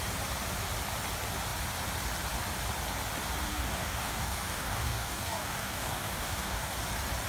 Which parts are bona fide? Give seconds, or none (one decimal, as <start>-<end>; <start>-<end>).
0.0-3.5; 6.7-7.3